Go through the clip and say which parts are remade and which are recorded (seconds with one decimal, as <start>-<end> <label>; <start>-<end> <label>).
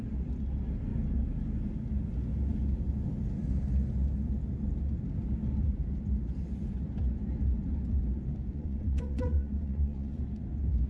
0.0-8.4 recorded; 8.4-10.2 remade; 10.2-10.9 recorded